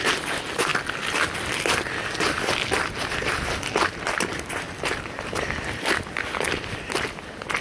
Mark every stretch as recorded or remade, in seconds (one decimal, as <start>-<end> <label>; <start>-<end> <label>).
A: 0.0-7.6 recorded